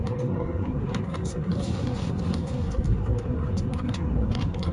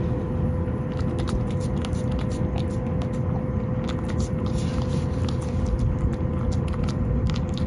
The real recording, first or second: second